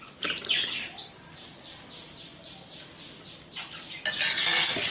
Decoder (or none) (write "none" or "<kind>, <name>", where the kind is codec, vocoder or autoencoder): none